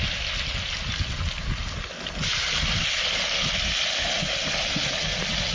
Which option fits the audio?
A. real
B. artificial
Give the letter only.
A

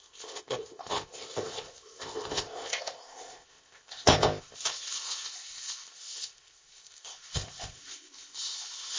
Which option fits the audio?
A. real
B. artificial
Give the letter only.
B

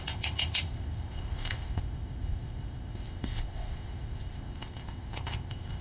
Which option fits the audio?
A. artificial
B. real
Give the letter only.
A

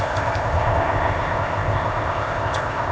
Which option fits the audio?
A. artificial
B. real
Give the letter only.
A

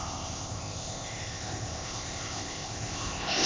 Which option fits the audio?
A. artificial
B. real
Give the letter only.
A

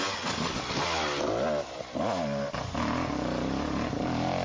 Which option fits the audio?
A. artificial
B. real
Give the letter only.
B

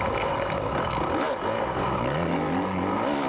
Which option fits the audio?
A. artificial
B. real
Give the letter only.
B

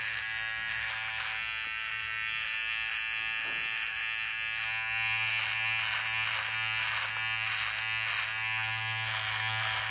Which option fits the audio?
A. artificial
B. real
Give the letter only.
B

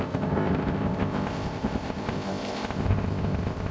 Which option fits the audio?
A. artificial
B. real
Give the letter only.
A